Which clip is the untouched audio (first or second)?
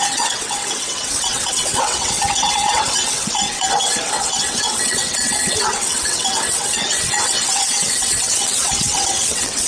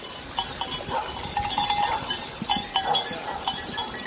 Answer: second